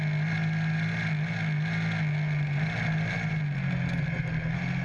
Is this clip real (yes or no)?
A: yes